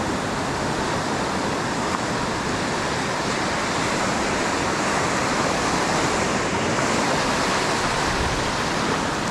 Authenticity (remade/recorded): recorded